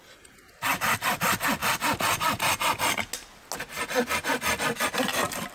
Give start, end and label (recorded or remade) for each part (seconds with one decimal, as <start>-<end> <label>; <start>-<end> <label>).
0.0-5.5 recorded